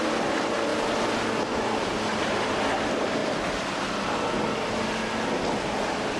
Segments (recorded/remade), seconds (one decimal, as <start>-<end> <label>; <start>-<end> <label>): 0.0-0.7 recorded; 0.7-2.2 remade; 2.2-6.2 recorded